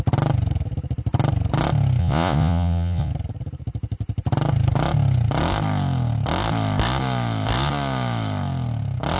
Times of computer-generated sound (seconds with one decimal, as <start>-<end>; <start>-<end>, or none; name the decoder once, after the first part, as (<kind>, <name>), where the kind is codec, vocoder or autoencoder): 2.0-3.1 (vocoder, Vocos)